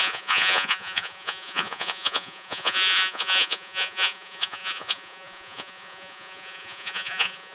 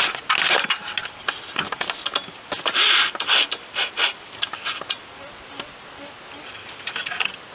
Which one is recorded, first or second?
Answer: second